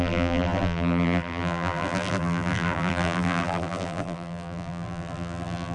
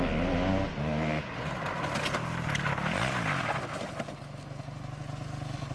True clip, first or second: second